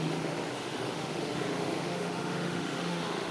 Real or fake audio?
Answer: fake